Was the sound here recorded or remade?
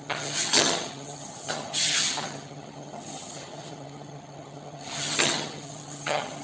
remade